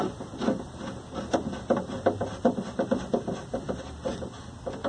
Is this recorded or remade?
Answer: recorded